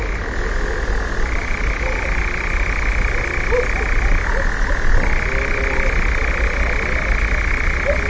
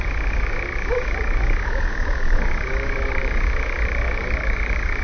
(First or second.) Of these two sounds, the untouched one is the first